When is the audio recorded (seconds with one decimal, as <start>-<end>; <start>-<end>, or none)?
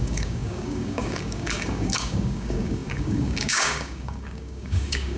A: none